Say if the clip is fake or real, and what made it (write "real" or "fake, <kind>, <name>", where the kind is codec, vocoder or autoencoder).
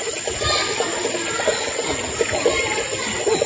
real